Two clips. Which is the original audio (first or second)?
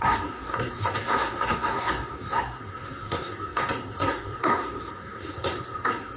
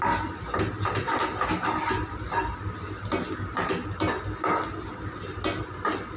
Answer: second